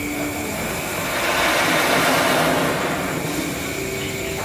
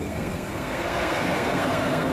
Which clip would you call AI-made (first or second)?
second